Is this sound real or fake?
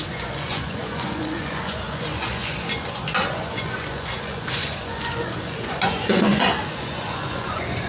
fake